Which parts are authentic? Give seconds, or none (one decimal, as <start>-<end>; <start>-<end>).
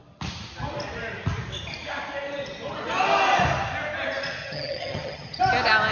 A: 0.0-4.4; 5.4-5.9